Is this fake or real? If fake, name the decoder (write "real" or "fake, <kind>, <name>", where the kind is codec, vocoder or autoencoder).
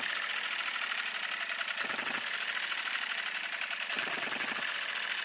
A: real